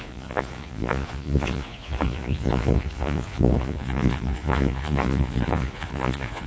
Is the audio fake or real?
fake